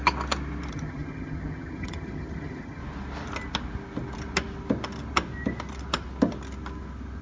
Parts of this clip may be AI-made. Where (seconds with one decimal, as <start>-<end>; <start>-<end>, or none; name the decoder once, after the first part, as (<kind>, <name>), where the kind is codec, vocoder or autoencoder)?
0.7-2.8 (vocoder, HiFi-GAN)